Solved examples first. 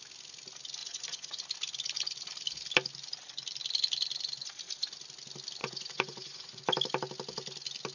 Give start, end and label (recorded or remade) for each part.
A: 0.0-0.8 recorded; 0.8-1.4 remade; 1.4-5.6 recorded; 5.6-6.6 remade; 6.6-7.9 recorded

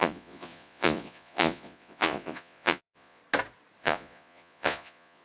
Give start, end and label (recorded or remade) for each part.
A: 0.0-3.2 remade; 3.2-3.8 recorded; 3.8-5.2 remade